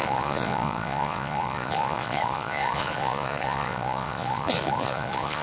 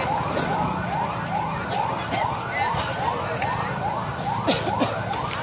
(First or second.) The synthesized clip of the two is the first